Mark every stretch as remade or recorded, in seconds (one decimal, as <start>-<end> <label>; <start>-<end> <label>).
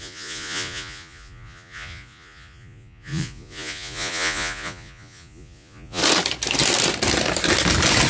0.0-6.0 remade; 6.0-8.1 recorded